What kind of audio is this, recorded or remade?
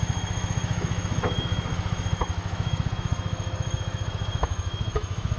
remade